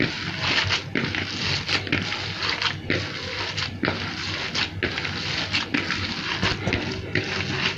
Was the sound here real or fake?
real